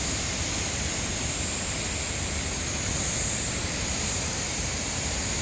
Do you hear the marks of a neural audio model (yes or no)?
no